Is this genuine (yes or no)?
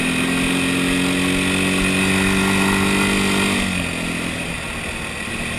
yes